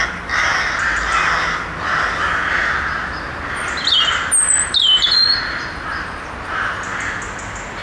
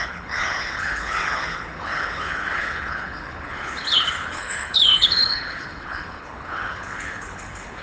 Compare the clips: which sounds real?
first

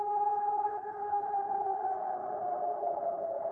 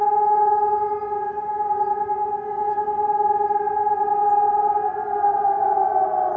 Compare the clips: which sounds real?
second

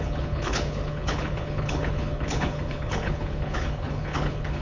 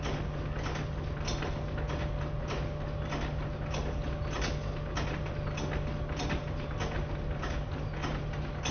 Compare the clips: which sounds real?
second